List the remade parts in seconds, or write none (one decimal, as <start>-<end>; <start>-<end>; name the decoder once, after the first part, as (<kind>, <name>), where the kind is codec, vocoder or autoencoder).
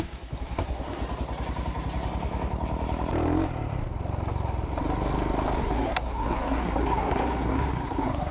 0.0-1.0 (codec, SNAC); 5.6-8.3